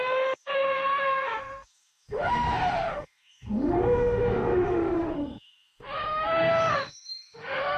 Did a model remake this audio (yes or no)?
yes